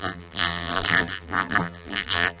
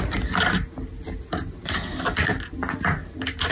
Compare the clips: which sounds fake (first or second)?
first